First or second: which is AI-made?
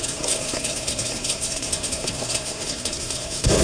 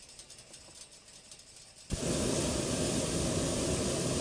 first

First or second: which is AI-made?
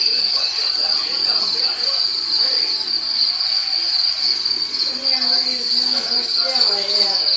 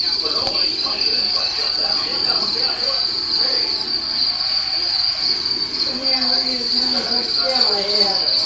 second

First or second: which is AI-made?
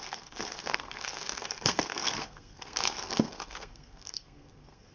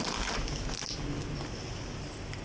first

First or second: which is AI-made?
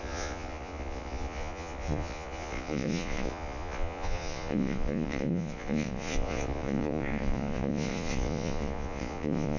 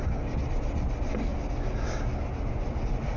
first